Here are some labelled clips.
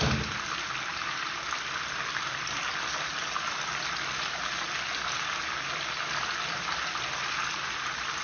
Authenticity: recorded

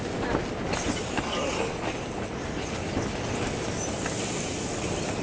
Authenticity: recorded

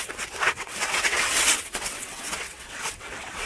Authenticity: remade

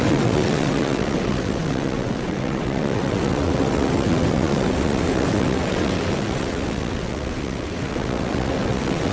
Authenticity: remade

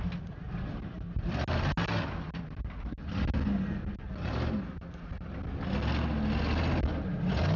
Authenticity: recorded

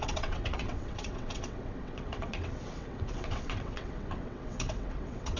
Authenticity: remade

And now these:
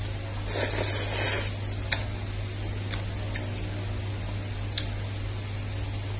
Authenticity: recorded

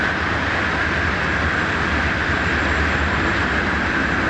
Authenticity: recorded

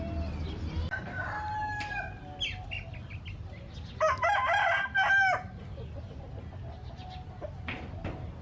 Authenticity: recorded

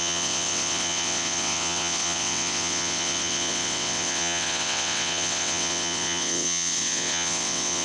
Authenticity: remade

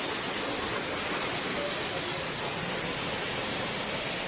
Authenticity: recorded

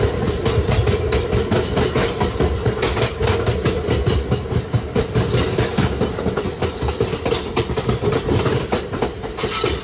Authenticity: recorded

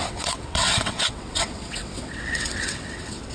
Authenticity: remade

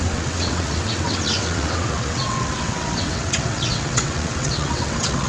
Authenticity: remade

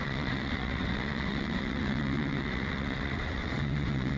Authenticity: remade